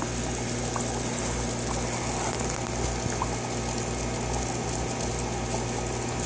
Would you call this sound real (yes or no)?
yes